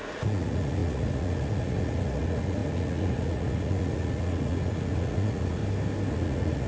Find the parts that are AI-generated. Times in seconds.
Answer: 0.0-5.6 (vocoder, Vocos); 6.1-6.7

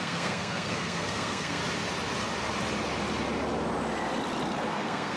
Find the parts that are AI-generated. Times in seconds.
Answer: 0.0-1.6 (codec, SNAC); 4.7-5.2

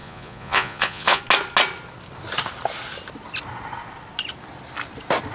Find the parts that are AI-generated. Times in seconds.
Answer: 0.0-1.2 (vocoder, Vocos)

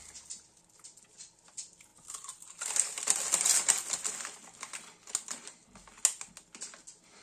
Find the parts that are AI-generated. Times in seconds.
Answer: none

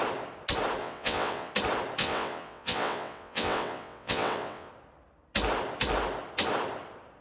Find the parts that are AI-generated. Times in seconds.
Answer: 0.8-1.5 (vocoder, WaveNeXt); 2.0-4.7